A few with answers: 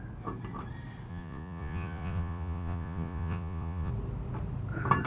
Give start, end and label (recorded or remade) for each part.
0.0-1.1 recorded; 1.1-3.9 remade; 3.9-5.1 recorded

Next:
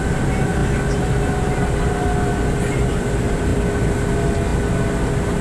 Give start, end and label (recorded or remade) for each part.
0.0-5.4 recorded

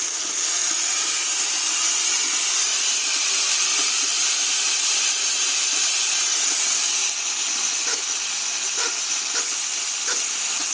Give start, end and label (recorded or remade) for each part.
0.0-2.7 recorded; 2.7-3.3 remade; 3.3-3.7 recorded; 3.7-6.6 remade; 6.6-10.7 recorded

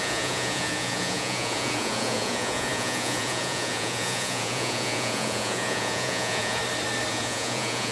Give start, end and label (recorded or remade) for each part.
0.0-6.6 remade; 6.6-7.1 recorded; 7.1-7.9 remade

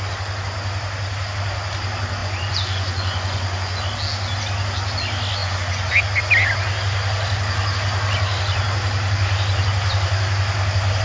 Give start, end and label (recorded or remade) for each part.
0.0-2.2 recorded; 2.2-3.8 remade; 3.8-5.4 recorded; 5.4-5.9 remade; 5.9-11.0 recorded

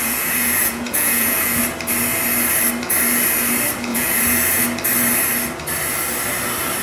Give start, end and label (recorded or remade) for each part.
0.0-1.6 remade; 1.6-3.9 recorded; 3.9-4.6 remade; 4.6-6.8 recorded

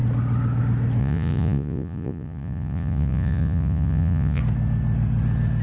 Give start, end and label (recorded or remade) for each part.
0.0-1.0 recorded; 1.0-4.4 remade; 4.4-5.6 recorded